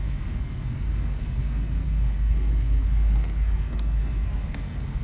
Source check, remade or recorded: remade